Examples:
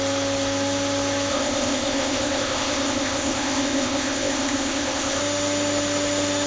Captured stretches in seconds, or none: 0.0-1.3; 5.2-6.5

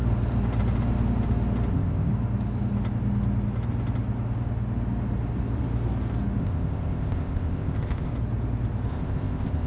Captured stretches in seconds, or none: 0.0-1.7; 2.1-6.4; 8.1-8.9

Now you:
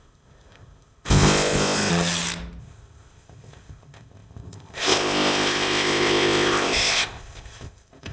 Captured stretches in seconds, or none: 1.9-2.6